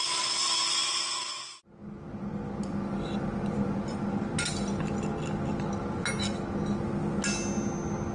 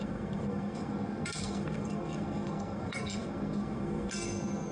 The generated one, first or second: second